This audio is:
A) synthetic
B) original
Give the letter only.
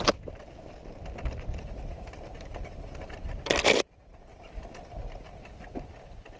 B